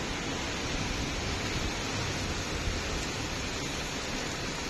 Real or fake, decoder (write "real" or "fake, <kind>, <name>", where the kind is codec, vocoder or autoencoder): real